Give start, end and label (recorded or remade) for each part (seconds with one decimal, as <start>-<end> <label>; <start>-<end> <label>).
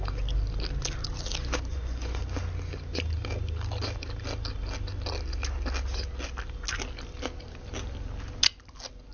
0.0-1.7 recorded; 1.7-2.2 remade; 2.2-9.1 recorded